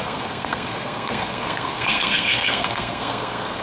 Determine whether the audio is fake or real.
fake